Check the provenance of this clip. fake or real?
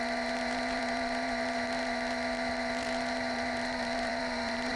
fake